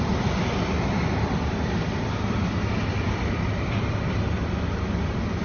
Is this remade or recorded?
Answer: remade